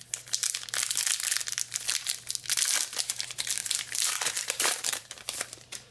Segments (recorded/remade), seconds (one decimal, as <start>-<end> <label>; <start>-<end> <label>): 0.0-3.6 recorded; 3.6-5.9 remade